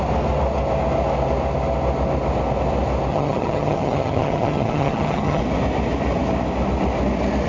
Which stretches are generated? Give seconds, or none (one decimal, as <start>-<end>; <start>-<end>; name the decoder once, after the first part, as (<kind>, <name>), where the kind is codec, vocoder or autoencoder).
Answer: 3.1-5.4 (vocoder, HiFi-GAN)